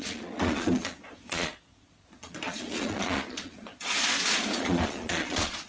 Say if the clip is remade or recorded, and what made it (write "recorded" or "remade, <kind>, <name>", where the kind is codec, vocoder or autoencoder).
remade, vocoder, Vocos